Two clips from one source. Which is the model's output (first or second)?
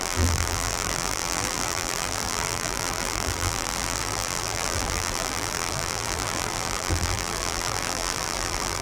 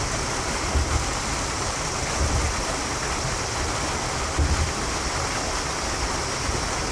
first